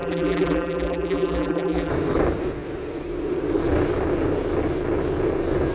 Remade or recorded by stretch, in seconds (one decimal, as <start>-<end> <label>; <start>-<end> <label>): 0.0-1.9 remade; 1.9-5.7 recorded